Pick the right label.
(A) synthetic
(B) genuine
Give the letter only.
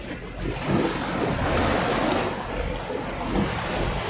B